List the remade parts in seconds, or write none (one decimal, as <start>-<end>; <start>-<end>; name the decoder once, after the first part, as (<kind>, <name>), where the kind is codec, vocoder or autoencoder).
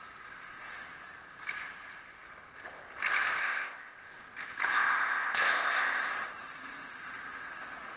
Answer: 3.4-4.2 (codec, ZipCodec); 4.7-6.1